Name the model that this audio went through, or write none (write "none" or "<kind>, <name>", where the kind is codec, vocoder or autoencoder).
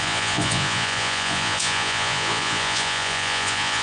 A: vocoder, Vocos